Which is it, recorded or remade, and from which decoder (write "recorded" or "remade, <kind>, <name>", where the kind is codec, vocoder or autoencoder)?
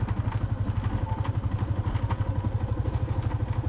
recorded